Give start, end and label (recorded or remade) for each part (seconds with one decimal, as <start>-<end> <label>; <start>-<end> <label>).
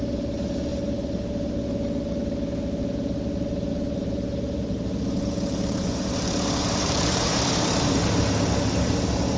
0.0-0.7 recorded; 0.7-1.5 remade; 1.5-3.7 recorded; 3.7-8.0 remade; 8.0-9.4 recorded